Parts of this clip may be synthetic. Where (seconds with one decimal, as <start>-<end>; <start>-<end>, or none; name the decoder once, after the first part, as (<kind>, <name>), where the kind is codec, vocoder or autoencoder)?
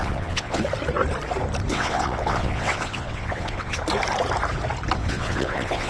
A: 0.0-0.6 (vocoder, WaveNeXt); 1.7-3.8; 5.0-5.9